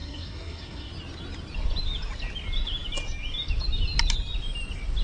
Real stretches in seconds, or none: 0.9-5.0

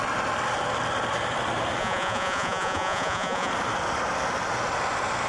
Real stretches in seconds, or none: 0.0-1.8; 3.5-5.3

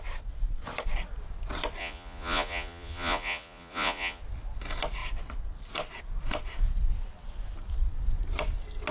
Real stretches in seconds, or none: 0.0-1.8; 4.2-8.9

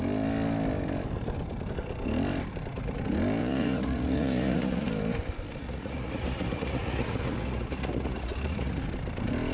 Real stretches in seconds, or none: 0.0-3.4; 4.9-5.6; 8.8-9.5

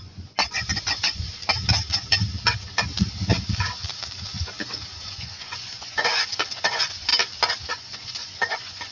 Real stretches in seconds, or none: 1.4-5.0; 7.1-7.7